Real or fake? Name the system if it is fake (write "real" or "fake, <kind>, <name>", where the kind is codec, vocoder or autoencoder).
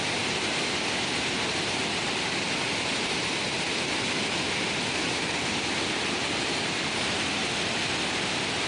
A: real